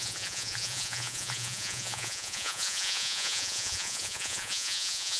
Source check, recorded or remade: remade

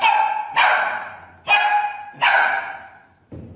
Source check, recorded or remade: recorded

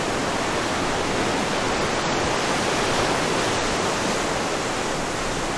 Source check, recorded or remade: recorded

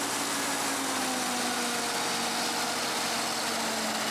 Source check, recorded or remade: recorded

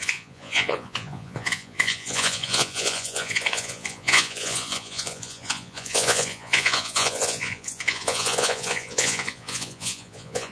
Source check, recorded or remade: remade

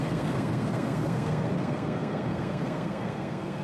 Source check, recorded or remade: remade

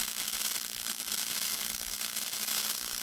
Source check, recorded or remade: remade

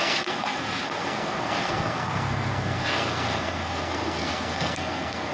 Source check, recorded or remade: remade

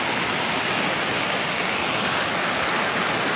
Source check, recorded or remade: recorded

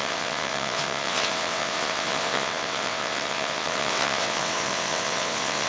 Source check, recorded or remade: remade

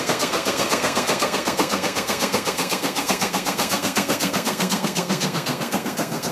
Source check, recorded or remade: remade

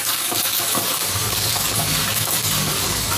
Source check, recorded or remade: remade